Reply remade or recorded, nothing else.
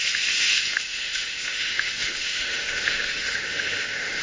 remade